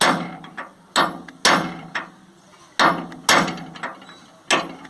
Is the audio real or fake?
real